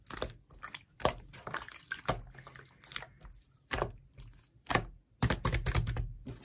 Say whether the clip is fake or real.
real